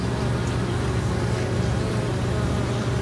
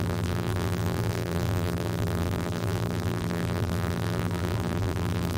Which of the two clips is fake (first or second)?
second